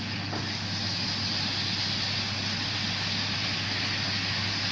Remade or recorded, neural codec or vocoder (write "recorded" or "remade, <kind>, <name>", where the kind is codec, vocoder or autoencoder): recorded